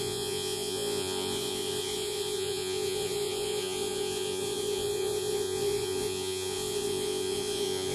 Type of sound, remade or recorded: remade